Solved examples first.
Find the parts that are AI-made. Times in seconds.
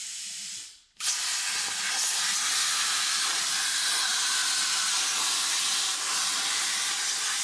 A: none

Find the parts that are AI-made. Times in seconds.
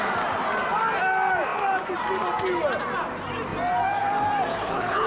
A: 4.5-5.1 (codec, HILCodec)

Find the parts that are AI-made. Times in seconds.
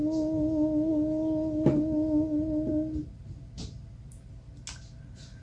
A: none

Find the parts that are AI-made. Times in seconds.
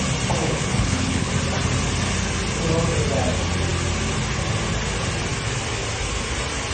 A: 0.4-1.3 (codec, HILCodec)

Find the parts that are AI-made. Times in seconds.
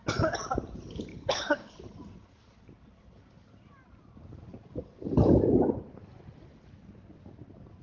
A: 1.1-1.7 (codec, HILCodec)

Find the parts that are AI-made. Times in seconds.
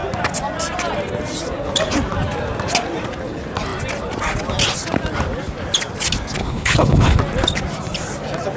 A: 6.4-7.2 (codec, HILCodec)